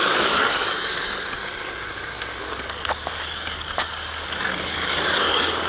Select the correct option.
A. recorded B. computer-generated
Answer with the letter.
B